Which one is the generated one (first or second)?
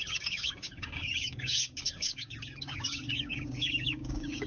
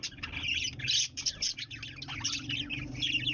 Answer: first